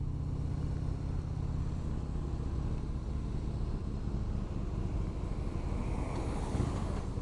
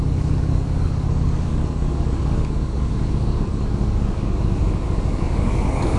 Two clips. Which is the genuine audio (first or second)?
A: first